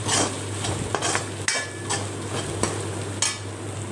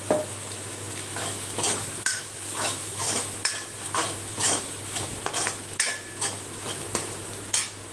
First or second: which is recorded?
first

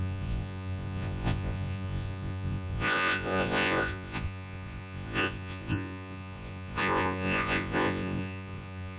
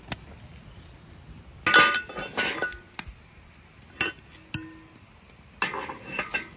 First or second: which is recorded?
second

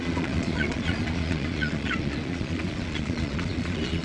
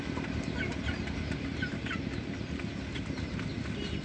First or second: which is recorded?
second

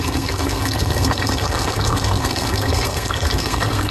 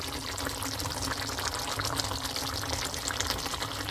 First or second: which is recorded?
second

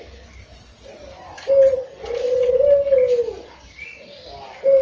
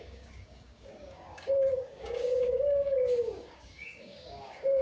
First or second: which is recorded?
first